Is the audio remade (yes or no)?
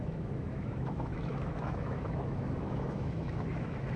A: yes